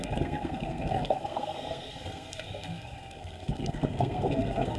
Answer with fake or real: fake